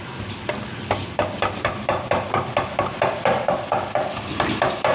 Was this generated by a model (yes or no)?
no